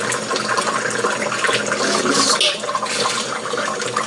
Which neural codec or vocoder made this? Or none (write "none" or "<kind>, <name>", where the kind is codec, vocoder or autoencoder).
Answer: none